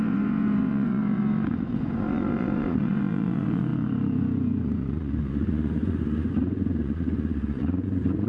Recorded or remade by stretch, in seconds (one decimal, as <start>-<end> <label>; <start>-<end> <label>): 0.0-8.3 remade